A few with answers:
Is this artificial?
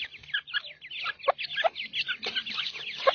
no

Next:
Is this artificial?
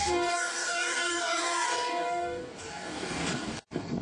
yes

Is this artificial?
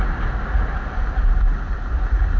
no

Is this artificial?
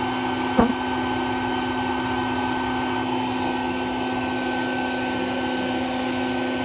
no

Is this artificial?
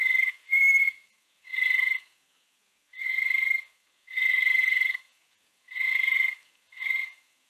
no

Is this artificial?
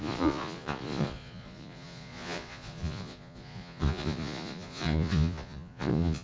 yes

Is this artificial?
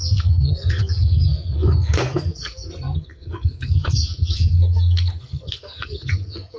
yes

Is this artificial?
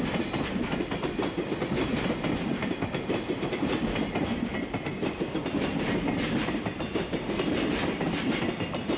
no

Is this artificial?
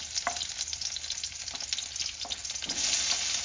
no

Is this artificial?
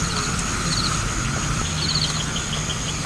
no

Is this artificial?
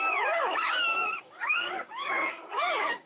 yes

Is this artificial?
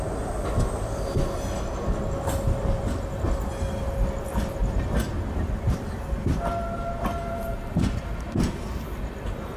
no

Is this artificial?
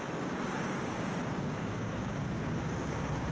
yes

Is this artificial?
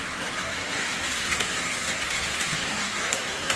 yes